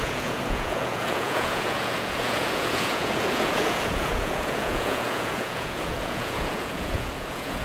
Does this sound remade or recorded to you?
remade